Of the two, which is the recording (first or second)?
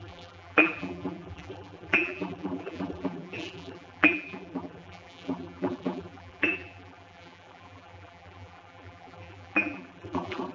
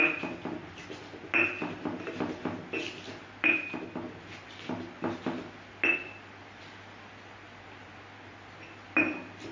second